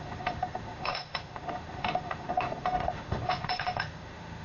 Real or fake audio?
fake